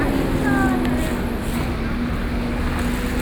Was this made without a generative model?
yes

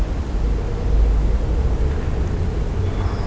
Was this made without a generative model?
yes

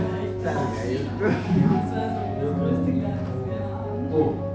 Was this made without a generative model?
yes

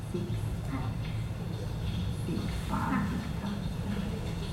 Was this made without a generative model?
yes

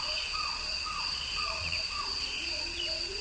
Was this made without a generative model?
no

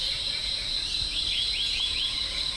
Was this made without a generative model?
no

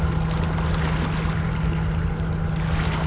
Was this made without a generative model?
yes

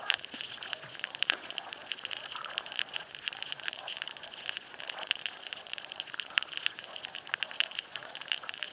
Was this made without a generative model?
no